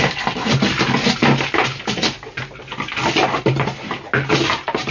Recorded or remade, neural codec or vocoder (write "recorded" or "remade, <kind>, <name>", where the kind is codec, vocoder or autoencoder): recorded